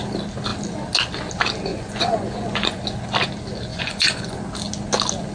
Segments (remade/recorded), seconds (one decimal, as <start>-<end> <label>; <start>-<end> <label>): 0.0-1.7 recorded; 1.7-2.8 remade; 2.8-3.7 recorded; 3.7-4.4 remade; 4.4-5.3 recorded

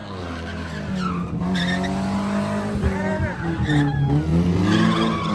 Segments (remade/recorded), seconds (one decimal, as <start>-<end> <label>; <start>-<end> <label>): 0.0-5.3 recorded

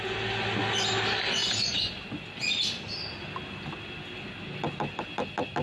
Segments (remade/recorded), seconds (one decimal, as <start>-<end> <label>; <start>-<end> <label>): 0.0-1.4 recorded; 1.4-1.9 remade; 1.9-5.6 recorded

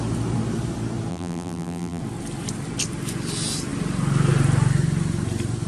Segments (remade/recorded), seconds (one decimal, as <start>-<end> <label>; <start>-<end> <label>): 0.0-1.1 recorded; 1.1-2.0 remade; 2.0-5.7 recorded

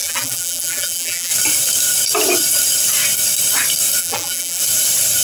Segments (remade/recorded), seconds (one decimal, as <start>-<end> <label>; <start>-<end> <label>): 0.0-1.3 remade; 1.3-4.0 recorded; 4.0-4.6 remade; 4.6-5.2 recorded

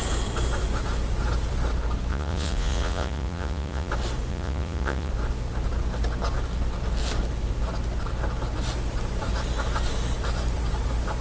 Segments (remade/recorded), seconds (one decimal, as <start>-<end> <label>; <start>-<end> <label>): 0.0-2.1 recorded; 2.1-3.9 remade; 3.9-4.3 recorded; 4.3-5.1 remade; 5.1-11.2 recorded